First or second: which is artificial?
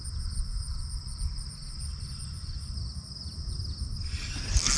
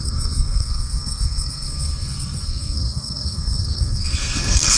second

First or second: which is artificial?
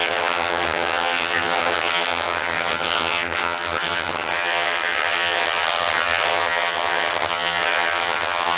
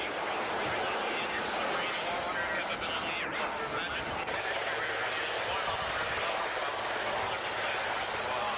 first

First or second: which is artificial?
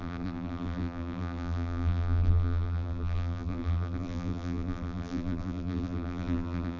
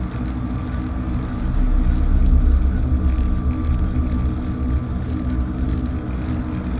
first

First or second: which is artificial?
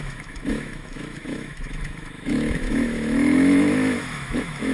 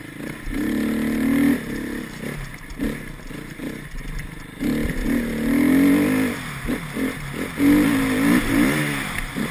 first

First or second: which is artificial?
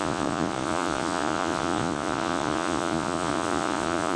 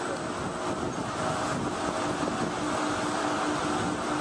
first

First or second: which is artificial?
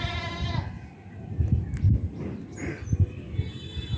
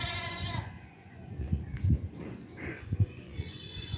second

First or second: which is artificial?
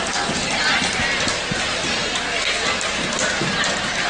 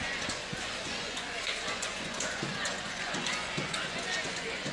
second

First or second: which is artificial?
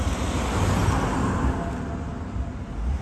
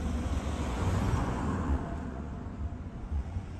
second